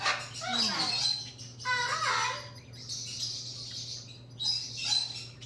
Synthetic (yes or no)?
no